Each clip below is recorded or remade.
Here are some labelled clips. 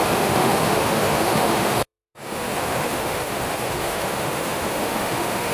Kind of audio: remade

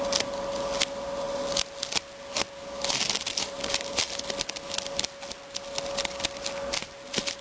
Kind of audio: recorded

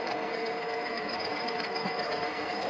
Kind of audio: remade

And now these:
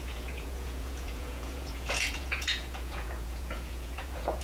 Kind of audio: remade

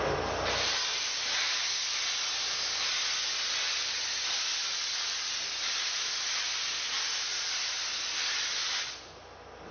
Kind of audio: recorded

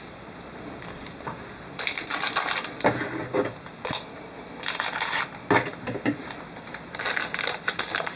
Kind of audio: recorded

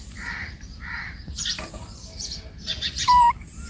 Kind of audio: remade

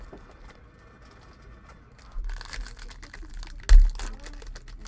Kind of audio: recorded